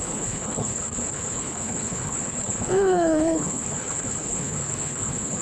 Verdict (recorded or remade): remade